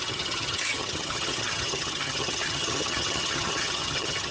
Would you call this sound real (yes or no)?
no